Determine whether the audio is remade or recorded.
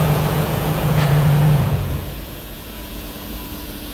remade